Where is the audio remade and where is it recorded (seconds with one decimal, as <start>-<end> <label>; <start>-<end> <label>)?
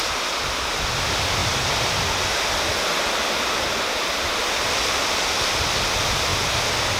0.0-7.0 recorded